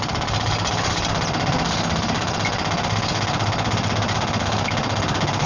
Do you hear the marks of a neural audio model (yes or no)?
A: no